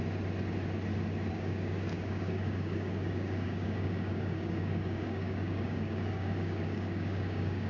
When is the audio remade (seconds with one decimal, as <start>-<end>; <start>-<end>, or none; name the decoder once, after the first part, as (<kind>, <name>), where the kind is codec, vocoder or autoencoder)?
1.3-7.7 (codec, DAC)